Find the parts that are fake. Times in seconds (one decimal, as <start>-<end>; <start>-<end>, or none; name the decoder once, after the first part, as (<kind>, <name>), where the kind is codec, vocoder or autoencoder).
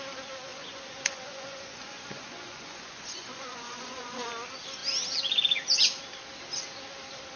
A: 0.5-4.3 (vocoder, Vocos)